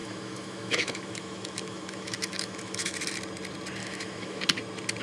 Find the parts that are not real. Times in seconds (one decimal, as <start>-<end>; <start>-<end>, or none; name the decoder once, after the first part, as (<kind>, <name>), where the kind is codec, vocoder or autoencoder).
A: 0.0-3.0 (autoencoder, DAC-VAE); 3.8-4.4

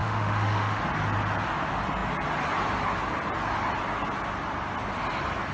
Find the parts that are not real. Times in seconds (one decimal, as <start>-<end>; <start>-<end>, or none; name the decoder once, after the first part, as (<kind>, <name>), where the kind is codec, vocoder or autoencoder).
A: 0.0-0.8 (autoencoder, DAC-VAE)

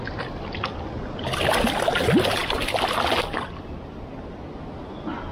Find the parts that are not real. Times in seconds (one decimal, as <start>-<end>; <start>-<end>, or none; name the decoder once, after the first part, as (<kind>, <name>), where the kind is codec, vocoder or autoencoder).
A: none

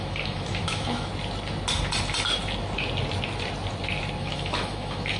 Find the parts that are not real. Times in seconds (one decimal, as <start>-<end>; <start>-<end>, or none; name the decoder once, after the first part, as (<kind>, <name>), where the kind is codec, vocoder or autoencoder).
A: 0.0-1.1 (autoencoder, DAC-VAE); 4.2-5.2